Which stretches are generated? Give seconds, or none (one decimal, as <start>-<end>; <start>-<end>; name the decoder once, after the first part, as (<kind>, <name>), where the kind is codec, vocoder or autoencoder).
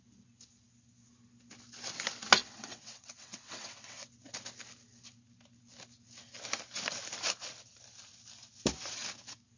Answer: 2.4-4.1 (vocoder, WaveNeXt)